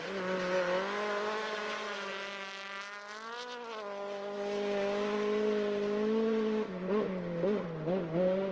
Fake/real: real